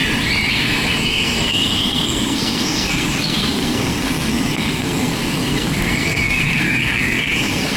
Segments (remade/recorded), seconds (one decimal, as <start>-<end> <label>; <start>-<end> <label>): 0.0-0.5 recorded; 0.5-7.8 remade